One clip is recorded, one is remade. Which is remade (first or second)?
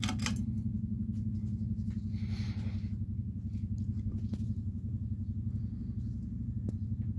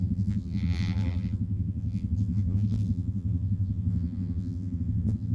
second